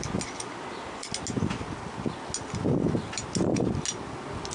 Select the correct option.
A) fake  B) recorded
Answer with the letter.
B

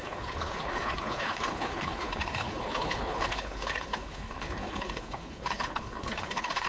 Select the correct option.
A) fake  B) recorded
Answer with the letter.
A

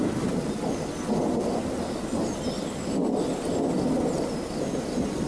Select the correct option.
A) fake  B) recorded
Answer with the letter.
B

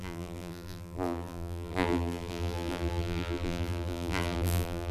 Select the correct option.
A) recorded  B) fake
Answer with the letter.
B